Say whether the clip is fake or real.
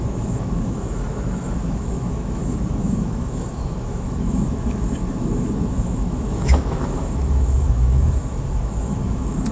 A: fake